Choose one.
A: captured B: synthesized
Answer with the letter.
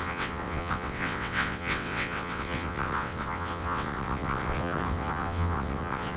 B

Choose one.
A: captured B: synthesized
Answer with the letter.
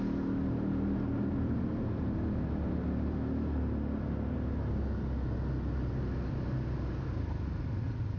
A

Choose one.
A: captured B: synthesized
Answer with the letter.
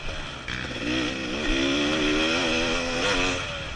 A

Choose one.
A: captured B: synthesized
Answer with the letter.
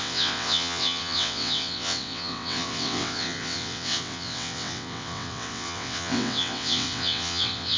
B